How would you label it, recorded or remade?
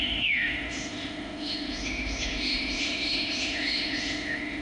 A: remade